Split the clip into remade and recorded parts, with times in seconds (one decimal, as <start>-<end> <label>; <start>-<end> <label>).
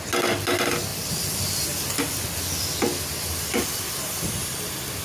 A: 0.0-5.0 recorded